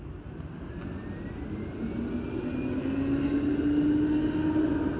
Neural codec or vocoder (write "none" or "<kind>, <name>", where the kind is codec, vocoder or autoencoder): none